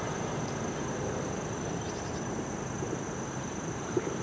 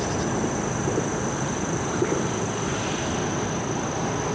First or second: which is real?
second